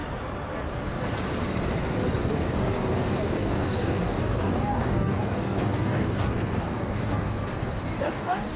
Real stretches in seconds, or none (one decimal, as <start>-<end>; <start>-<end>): 0.0-2.2; 7.3-8.0